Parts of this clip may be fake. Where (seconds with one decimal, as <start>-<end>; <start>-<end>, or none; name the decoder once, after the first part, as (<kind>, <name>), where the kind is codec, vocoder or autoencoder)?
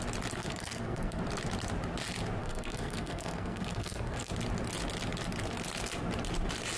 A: 0.4-1.2 (codec, SNAC); 2.4-4.3